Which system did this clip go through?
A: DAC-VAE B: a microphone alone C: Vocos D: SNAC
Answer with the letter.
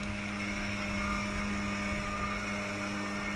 B